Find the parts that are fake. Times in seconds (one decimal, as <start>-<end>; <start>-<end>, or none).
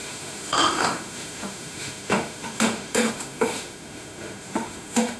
0.0-5.2